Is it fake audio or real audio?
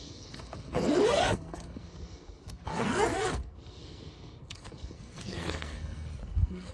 fake